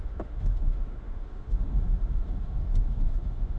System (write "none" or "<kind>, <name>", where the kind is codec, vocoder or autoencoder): autoencoder, DAC-VAE